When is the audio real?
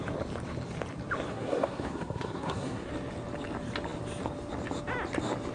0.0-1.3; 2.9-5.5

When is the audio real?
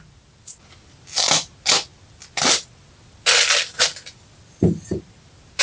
0.0-5.6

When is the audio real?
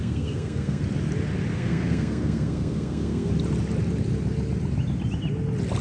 0.8-1.5; 3.3-5.8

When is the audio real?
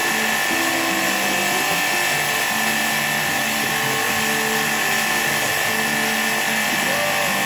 0.0-7.5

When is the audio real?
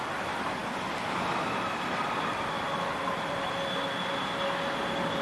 0.0-5.2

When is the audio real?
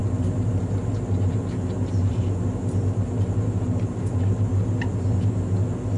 0.0-6.0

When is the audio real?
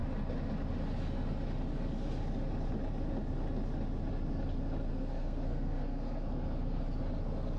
0.0-4.9; 6.8-7.6